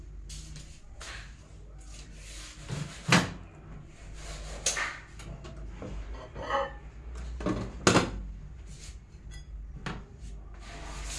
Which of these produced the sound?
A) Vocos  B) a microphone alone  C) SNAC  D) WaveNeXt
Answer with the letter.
B